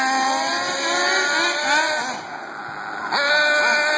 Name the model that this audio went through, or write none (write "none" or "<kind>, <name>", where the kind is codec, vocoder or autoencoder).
none